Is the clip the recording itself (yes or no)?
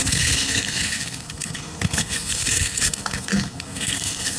no